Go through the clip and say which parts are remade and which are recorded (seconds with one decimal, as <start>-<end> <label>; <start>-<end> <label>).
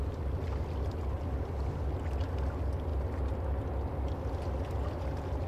0.0-5.5 recorded